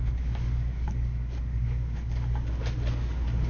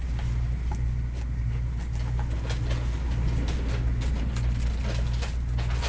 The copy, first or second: first